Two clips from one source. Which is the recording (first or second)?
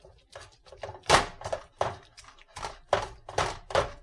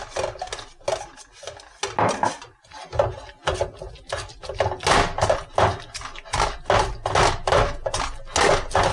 second